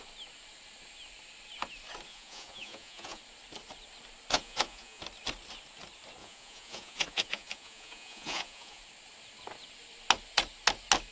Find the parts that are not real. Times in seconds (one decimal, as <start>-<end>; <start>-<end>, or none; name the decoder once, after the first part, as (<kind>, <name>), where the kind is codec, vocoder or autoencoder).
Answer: 2.1-3.2 (vocoder, Vocos); 4.3-5.0; 6.2-8.8